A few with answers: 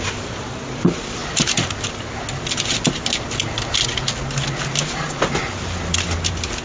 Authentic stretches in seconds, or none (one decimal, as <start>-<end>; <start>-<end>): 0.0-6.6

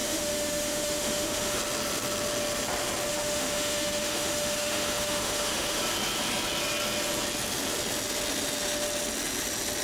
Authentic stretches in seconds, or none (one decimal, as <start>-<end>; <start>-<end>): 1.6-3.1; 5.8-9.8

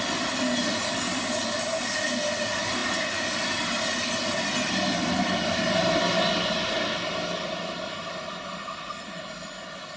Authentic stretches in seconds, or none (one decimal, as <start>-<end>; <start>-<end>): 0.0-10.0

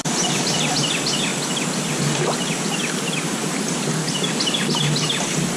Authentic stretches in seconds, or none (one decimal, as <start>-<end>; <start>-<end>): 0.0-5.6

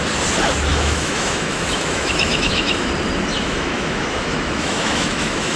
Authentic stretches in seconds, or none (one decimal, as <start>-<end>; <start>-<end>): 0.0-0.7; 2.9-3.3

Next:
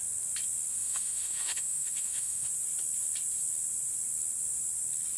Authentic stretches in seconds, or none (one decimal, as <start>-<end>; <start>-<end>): 0.0-0.7; 2.5-5.2

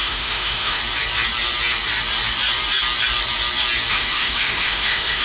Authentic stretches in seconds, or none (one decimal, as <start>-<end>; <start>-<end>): 0.8-3.9

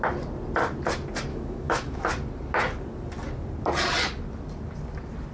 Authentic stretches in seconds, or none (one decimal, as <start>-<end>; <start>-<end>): 0.0-1.3; 2.0-5.3